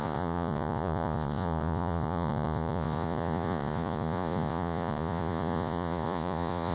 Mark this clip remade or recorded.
remade